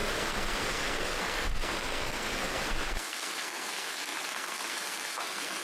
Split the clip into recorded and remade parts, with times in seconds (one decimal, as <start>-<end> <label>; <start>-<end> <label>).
0.0-5.6 remade